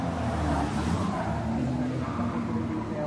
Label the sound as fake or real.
real